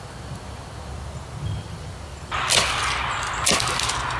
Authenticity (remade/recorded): recorded